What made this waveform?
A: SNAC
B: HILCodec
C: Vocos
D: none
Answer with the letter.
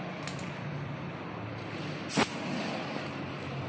D